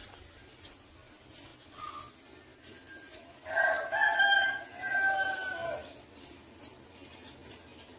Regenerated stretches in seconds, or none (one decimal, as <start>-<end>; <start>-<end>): none